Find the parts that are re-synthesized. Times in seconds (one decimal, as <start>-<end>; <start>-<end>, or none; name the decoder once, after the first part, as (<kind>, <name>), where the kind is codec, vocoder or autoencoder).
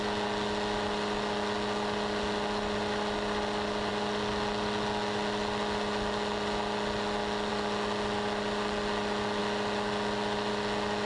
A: none